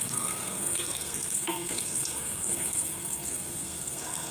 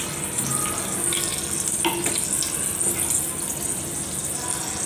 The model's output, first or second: first